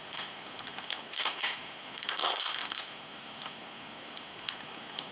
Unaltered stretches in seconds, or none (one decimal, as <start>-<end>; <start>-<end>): none